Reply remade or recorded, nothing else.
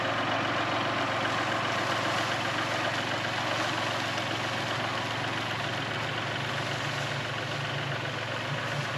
recorded